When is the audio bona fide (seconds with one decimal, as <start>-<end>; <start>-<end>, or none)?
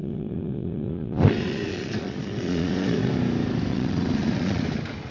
3.1-3.7; 4.6-5.1